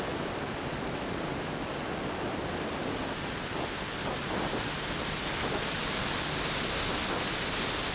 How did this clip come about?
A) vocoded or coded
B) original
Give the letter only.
B